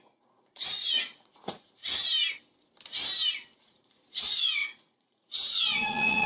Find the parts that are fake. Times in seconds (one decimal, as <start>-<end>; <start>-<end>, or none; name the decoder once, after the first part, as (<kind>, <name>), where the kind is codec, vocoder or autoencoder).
0.0-1.8 (vocoder, Vocos); 3.6-6.3